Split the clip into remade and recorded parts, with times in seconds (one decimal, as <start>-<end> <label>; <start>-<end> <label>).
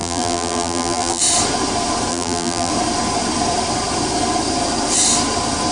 0.0-1.2 remade; 1.2-2.1 recorded; 2.1-2.7 remade; 2.7-5.7 recorded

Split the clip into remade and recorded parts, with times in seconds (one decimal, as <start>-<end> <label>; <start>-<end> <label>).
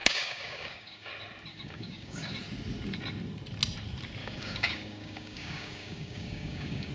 0.0-1.1 remade; 1.1-1.5 recorded; 1.5-2.3 remade; 2.3-4.2 recorded; 4.2-6.9 remade